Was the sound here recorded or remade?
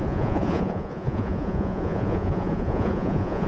remade